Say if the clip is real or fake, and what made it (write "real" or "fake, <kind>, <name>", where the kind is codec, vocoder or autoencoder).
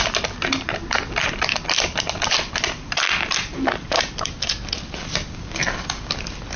real